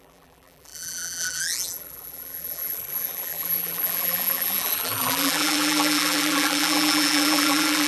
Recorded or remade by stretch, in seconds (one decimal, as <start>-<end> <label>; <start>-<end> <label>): 0.0-7.9 remade